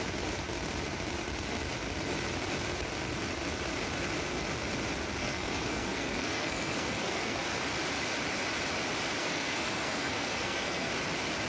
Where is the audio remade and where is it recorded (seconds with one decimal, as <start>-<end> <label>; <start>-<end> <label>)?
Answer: 0.0-5.2 recorded; 5.2-7.6 remade; 7.6-9.2 recorded; 9.2-10.9 remade; 10.9-11.5 recorded